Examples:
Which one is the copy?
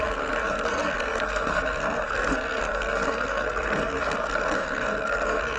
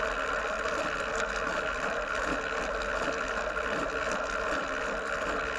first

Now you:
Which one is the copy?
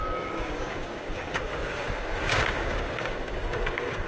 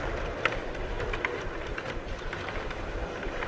first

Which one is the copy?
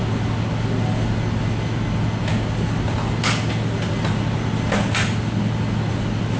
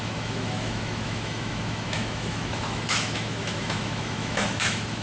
second